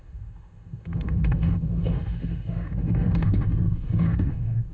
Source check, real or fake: fake